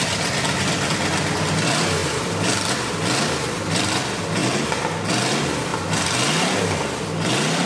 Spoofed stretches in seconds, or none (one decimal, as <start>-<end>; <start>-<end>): none